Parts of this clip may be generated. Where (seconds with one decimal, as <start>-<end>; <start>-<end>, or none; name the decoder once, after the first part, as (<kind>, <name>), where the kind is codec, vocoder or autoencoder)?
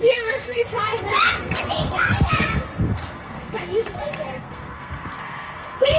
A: 0.0-6.0 (codec, SNAC)